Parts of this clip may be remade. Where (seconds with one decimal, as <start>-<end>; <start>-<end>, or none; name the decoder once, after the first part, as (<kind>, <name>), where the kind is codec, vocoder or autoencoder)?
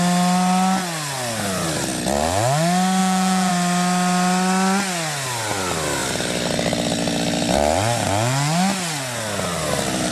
3.0-3.5 (vocoder, Vocos)